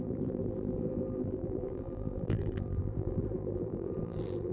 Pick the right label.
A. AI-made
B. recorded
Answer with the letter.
A